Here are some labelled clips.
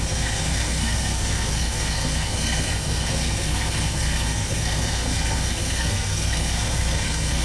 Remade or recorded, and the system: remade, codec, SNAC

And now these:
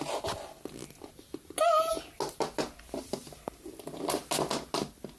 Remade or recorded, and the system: recorded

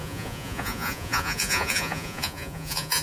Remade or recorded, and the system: remade, vocoder, Vocos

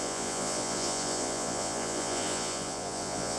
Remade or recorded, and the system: remade, vocoder, Vocos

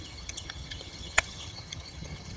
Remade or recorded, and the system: remade, vocoder, HiFi-GAN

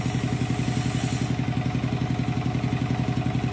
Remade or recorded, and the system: recorded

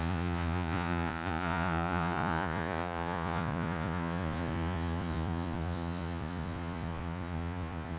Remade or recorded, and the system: remade, vocoder, Vocos